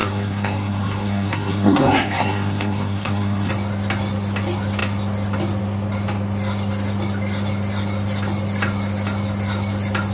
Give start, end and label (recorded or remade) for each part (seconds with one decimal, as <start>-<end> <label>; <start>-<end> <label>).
0.0-3.5 remade; 3.5-10.1 recorded